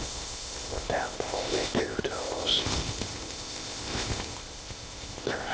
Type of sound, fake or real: fake